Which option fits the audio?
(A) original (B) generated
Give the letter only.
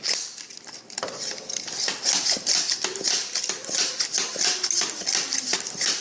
A